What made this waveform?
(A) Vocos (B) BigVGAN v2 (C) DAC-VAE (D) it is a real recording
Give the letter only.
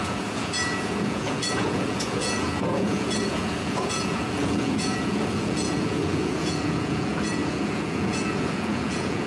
A